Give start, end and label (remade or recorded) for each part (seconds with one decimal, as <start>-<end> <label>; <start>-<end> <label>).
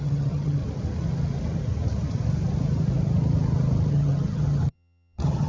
0.0-0.6 remade; 0.6-3.9 recorded; 3.9-5.5 remade